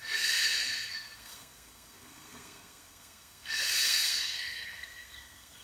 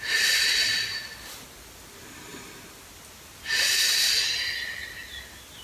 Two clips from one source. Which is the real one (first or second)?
second